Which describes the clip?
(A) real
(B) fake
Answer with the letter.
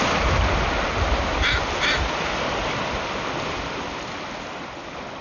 A